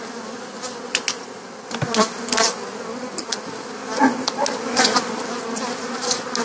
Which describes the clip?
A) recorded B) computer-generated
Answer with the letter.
A